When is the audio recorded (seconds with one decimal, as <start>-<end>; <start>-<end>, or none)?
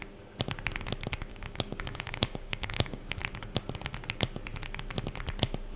0.0-1.3; 3.2-5.8